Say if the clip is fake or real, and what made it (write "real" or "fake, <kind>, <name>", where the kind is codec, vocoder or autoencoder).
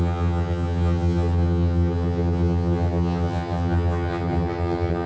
fake, vocoder, HiFi-GAN